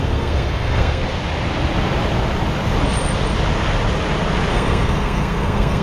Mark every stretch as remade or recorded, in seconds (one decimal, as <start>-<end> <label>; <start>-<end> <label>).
0.0-1.0 remade; 1.0-4.5 recorded; 4.5-5.8 remade